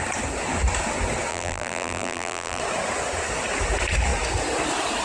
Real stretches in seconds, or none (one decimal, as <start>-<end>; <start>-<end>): 0.0-1.3; 2.6-5.0